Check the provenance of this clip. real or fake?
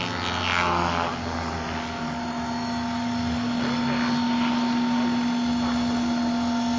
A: real